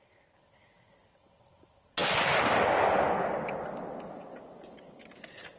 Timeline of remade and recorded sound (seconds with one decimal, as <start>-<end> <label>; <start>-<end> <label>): 0.0-5.6 recorded